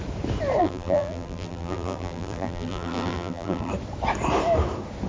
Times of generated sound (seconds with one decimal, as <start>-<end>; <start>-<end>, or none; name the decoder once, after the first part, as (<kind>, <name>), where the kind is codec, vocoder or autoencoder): 0.6-3.7 (vocoder, BigVGAN v2)